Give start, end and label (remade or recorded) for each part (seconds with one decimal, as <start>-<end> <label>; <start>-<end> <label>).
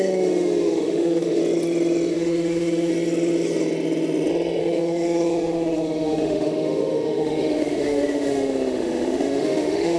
0.0-1.4 remade; 1.4-2.1 recorded; 2.1-2.9 remade; 2.9-4.6 recorded; 4.6-10.0 remade